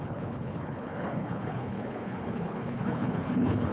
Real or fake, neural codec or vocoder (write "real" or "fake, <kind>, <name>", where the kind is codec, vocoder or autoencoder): fake, codec, HILCodec